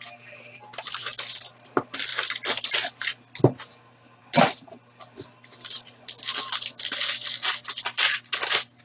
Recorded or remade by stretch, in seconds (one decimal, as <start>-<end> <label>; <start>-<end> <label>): 0.0-8.8 recorded